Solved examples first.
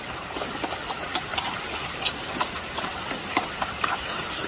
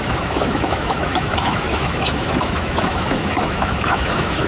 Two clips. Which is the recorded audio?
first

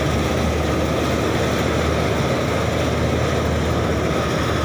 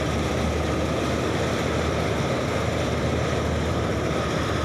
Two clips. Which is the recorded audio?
first